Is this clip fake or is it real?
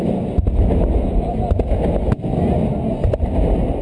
real